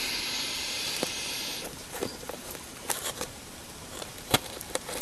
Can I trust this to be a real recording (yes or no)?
no